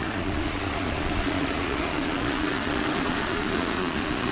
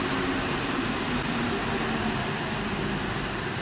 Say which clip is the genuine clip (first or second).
second